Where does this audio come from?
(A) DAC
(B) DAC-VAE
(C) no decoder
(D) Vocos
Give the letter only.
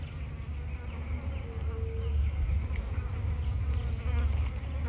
C